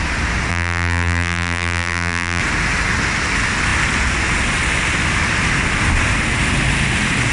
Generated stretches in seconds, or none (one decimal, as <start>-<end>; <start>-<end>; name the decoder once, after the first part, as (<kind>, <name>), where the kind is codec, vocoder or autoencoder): 0.5-2.4 (vocoder, BigVGAN v2)